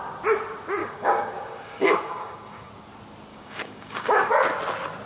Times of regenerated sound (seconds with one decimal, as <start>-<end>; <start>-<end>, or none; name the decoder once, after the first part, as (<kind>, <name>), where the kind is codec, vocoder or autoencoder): 0.8-2.7 (codec, DAC); 3.3-4.3